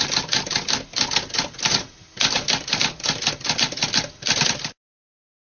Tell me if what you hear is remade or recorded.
recorded